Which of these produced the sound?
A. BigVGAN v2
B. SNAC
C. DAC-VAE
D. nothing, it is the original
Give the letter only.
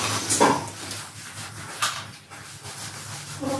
D